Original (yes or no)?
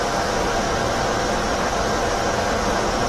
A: yes